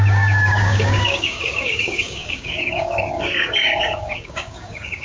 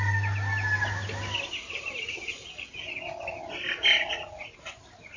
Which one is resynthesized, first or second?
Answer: first